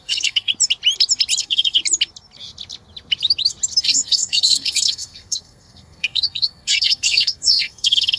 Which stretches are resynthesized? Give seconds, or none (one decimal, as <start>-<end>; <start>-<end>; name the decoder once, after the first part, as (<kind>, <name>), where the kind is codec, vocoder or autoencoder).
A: 0.0-0.5 (codec, SNAC); 1.4-1.8; 3.8-8.2